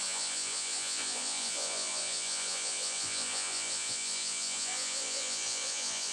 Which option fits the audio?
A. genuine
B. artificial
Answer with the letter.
B